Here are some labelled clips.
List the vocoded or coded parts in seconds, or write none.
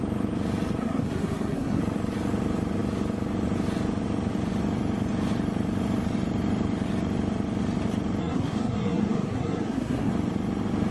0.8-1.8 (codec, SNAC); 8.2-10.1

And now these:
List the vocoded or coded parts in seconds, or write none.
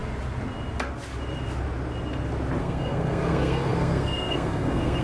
2.6-5.0 (codec, SNAC)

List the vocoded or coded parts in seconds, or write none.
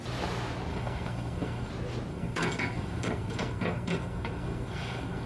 0.7-1.7 (codec, SNAC); 2.1-5.3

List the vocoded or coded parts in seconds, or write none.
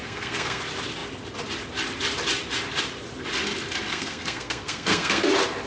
0.0-0.6 (codec, SNAC); 3.9-5.3